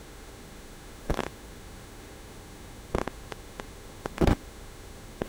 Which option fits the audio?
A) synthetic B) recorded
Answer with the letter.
A